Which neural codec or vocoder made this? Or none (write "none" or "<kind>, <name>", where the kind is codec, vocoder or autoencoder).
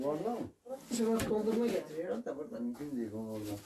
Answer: none